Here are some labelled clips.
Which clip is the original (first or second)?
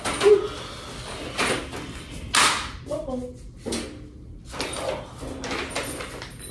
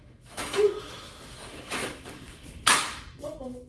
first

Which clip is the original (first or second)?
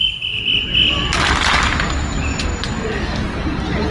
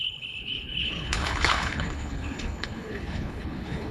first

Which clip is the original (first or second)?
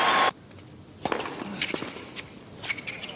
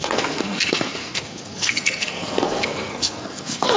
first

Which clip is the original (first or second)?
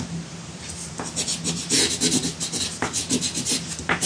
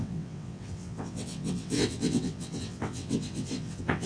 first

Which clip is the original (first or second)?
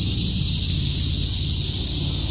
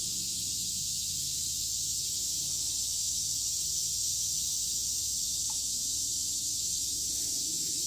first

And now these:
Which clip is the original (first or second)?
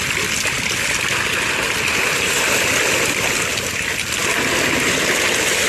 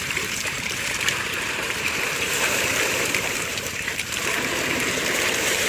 first